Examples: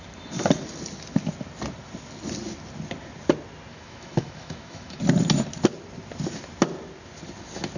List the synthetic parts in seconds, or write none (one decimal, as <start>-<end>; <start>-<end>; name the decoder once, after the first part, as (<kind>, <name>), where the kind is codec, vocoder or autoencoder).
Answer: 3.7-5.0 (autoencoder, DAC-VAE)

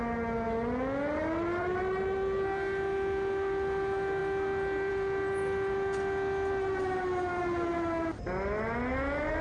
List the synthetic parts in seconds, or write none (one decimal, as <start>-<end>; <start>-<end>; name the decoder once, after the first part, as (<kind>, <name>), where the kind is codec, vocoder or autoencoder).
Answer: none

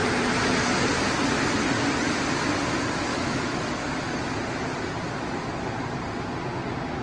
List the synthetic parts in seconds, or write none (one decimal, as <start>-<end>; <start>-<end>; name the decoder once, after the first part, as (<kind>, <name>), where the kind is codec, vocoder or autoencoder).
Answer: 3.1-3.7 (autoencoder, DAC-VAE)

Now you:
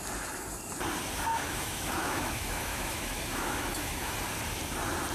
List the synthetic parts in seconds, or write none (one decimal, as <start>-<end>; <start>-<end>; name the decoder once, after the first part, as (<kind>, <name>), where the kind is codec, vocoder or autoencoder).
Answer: 1.3-4.1 (autoencoder, DAC-VAE)

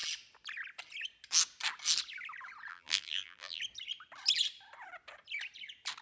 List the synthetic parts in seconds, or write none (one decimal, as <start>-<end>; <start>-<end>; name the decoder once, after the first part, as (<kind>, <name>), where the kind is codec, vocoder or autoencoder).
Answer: 2.7-3.6 (vocoder, BigVGAN v2)

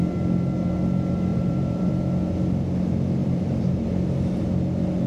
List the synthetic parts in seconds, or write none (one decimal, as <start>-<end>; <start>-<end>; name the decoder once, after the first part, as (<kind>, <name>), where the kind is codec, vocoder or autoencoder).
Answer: 1.3-1.9 (vocoder, BigVGAN v2); 3.2-3.8

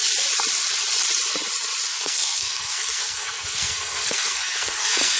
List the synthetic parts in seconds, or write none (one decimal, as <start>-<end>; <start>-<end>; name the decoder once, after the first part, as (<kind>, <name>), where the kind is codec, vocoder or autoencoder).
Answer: 1.9-5.2 (codec, SNAC)

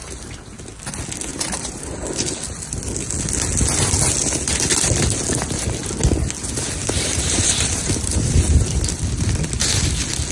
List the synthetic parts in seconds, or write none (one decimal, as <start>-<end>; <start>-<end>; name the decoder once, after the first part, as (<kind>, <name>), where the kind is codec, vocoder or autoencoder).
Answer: 1.3-2.1 (vocoder, BigVGAN v2); 6.8-8.4